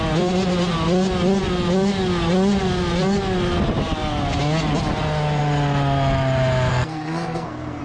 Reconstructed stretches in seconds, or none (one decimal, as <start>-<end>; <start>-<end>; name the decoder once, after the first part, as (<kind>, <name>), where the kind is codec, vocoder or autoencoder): 6.7-7.8 (codec, SNAC)